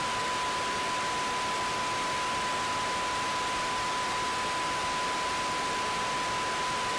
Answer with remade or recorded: recorded